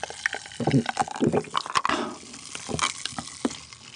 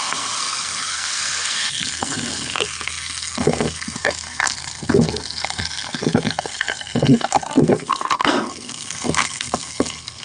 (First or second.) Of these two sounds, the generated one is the second